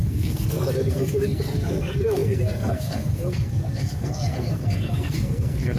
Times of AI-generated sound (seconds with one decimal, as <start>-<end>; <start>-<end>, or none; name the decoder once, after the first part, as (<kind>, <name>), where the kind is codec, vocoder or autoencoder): 0.0-5.8 (codec, SNAC)